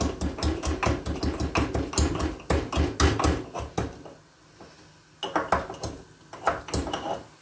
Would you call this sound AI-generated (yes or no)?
no